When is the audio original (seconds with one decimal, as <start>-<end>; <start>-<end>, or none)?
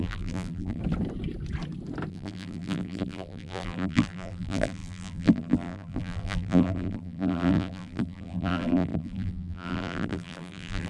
0.8-2.1